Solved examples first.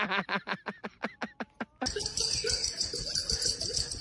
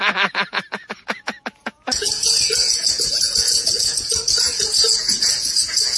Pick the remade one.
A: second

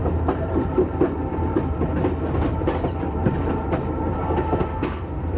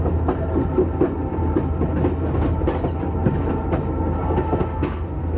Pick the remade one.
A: first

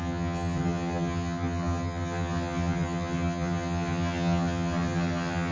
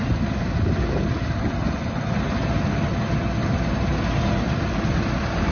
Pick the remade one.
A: first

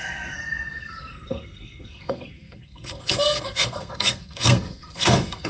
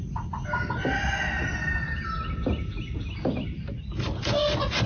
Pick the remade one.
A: first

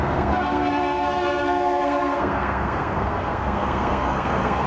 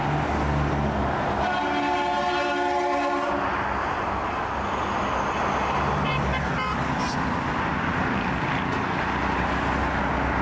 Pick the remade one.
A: first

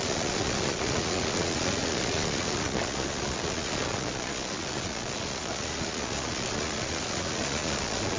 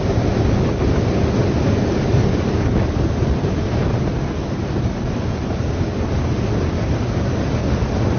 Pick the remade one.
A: first